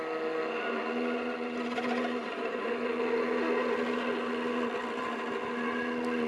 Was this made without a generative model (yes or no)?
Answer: yes